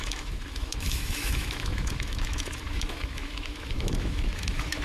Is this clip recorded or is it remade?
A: remade